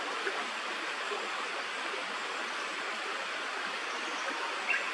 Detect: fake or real real